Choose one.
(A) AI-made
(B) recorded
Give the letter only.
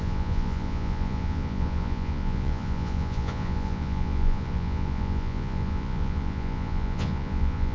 A